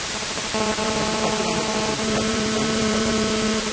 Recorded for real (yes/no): no